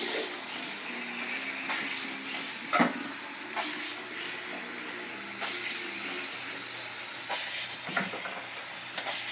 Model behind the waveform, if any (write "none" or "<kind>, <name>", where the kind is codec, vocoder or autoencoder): none